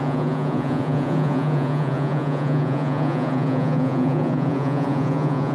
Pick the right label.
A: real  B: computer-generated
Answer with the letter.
B